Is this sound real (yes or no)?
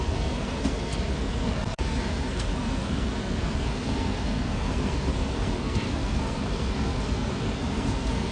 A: no